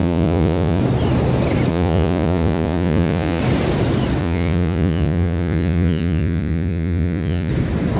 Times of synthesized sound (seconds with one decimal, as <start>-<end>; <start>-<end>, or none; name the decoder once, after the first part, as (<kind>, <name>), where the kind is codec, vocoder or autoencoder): 0.0-0.8 (vocoder, Vocos); 1.7-3.4; 4.2-7.5

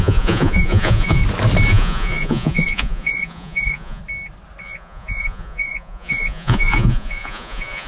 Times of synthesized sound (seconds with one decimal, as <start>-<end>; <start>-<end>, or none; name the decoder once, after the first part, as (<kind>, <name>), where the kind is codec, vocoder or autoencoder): 0.0-1.2 (vocoder, Vocos); 1.7-4.0; 4.6-7.9

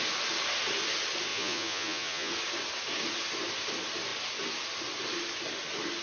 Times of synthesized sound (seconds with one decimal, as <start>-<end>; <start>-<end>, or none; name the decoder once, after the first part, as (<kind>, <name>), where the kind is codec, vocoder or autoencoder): 1.3-2.3 (vocoder, Vocos)

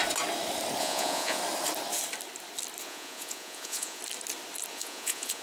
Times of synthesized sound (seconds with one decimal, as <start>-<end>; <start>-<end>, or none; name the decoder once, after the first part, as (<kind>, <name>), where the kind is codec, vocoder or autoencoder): 0.8-1.4 (vocoder, Vocos); 2.8-4.0; 4.7-5.4

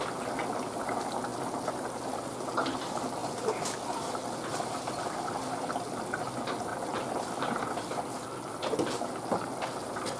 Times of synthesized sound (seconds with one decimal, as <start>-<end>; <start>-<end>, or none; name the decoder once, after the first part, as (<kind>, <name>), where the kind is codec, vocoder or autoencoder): none

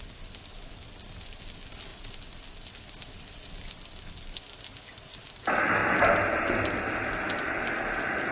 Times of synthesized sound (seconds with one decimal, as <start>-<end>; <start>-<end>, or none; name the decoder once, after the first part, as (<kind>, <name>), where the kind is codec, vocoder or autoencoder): none